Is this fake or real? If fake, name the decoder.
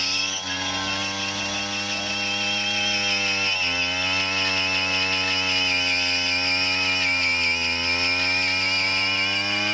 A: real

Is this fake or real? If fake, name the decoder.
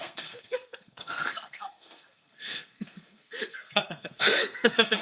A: fake, codec, SNAC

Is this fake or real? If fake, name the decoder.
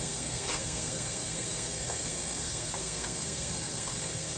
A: fake, codec, SNAC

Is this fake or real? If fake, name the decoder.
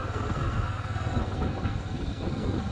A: fake, codec, SNAC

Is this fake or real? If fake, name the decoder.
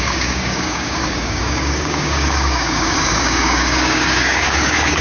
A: fake, codec, DAC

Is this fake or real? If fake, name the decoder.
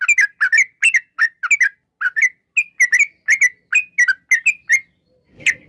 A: real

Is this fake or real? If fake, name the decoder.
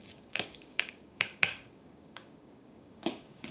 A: fake, codec, DAC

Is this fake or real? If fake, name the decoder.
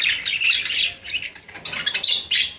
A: real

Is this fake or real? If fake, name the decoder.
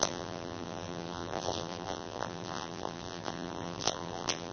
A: fake, vocoder, BigVGAN v2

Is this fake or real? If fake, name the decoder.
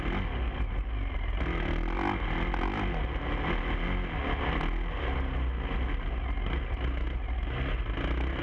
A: real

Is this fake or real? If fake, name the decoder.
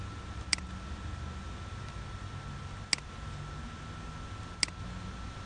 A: real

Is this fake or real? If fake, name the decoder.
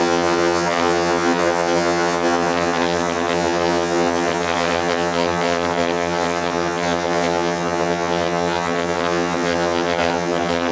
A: fake, vocoder, HiFi-GAN